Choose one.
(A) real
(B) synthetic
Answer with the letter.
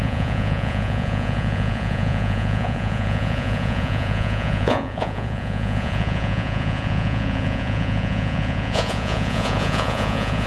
B